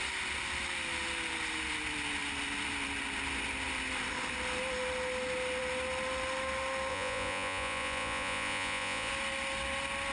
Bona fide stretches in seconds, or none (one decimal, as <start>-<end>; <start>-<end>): 0.0-6.9; 9.1-10.1